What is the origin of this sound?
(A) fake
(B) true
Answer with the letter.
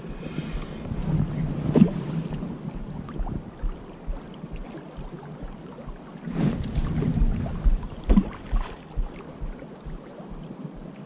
B